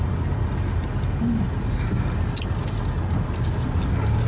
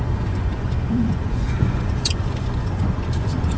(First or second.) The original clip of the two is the first